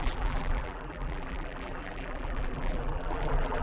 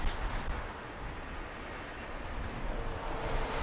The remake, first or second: first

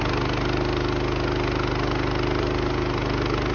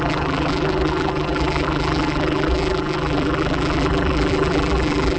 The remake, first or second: second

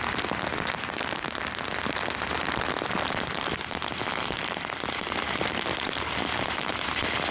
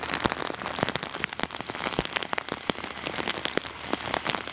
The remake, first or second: first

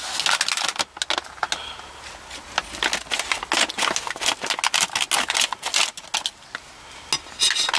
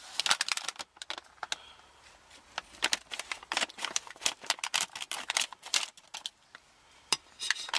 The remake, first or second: second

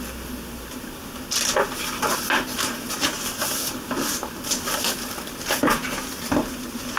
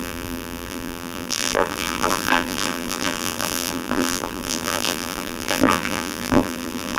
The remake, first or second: second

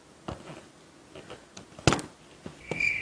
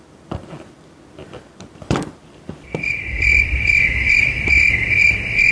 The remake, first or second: second